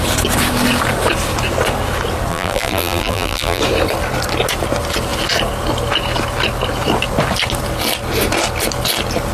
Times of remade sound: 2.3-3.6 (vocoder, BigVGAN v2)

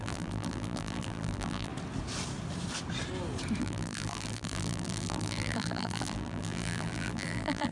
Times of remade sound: 0.0-1.7 (vocoder, BigVGAN v2); 3.6-7.7

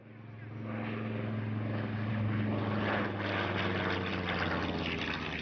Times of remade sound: none